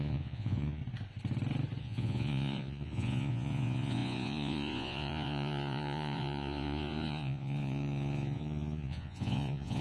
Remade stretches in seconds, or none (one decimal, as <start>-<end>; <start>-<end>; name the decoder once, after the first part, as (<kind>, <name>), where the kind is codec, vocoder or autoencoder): 0.0-0.8 (vocoder, Vocos); 1.8-9.8